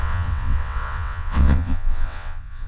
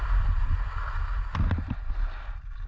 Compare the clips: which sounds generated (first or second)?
first